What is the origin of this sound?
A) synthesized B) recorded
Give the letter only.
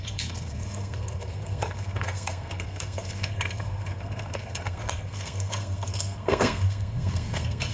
A